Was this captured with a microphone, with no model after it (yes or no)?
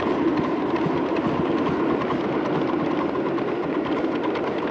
yes